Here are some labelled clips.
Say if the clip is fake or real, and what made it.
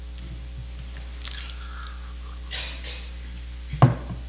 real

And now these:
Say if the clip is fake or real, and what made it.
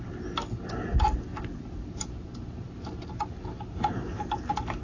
real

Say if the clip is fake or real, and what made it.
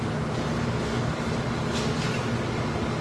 real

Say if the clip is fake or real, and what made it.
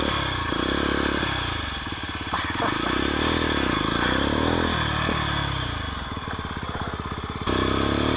real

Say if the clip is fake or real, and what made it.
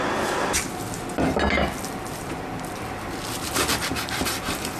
real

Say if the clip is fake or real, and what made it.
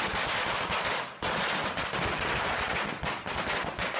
real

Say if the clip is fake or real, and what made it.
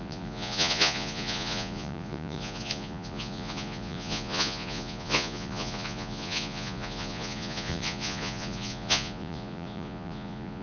fake, vocoder, Vocos